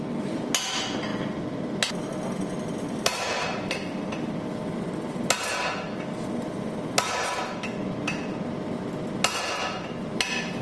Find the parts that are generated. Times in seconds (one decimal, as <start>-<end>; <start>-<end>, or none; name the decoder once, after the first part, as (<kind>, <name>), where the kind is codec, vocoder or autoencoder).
none